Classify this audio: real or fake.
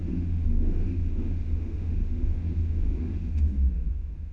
fake